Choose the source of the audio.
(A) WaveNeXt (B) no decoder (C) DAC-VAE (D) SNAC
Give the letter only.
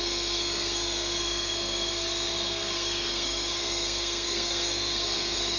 D